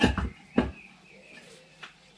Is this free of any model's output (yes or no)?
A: yes